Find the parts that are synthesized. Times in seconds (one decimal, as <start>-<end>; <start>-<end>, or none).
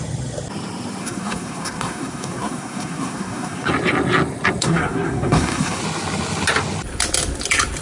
1.0-3.7; 4.6-5.8